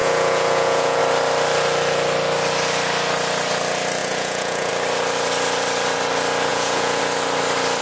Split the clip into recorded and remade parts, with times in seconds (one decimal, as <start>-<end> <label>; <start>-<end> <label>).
0.0-1.0 remade; 1.0-4.0 recorded; 4.0-4.7 remade; 4.7-6.5 recorded; 6.5-7.0 remade; 7.0-7.8 recorded